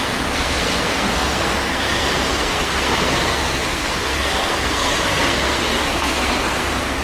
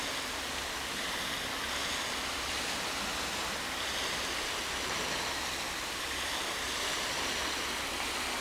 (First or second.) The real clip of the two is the second